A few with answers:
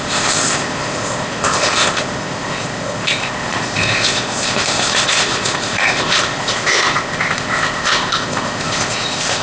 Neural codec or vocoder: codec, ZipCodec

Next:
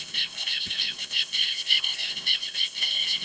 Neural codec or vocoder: codec, ZipCodec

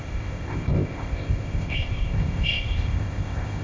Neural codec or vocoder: codec, ZipCodec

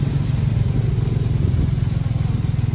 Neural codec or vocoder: none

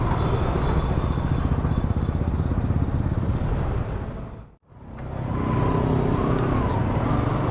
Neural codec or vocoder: none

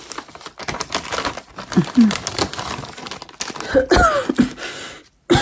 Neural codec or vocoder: none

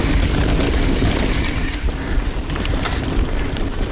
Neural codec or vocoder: none